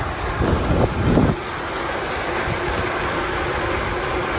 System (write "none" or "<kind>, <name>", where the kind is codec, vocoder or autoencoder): none